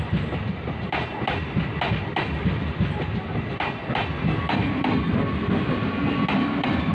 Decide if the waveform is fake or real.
real